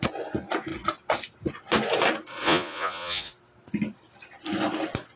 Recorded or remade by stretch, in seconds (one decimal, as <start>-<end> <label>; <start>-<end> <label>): 0.0-2.4 recorded; 2.4-3.3 remade; 3.3-5.2 recorded